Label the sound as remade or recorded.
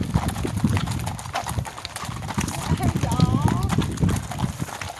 recorded